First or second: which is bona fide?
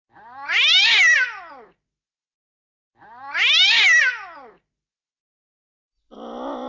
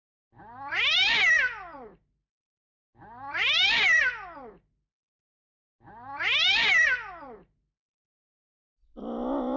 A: first